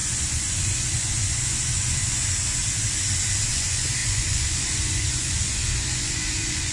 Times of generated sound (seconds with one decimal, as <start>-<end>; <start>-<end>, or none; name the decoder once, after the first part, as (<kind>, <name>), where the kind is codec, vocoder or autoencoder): 0.0-2.6 (vocoder, Vocos); 3.5-6.7